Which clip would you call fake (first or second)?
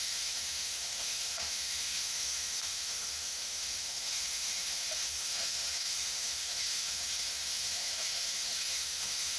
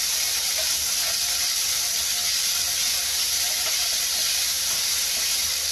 first